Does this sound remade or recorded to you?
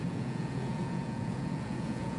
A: remade